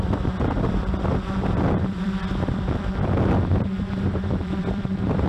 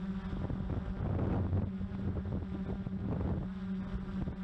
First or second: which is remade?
first